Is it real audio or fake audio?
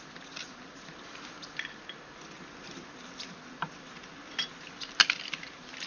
real